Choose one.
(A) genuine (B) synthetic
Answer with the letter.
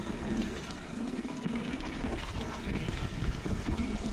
B